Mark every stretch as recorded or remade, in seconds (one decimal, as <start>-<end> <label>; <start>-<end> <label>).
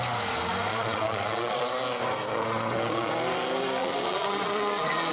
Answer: 0.0-0.7 recorded; 0.7-1.7 remade; 1.7-2.3 recorded; 2.3-3.1 remade; 3.1-3.8 recorded; 3.8-5.1 remade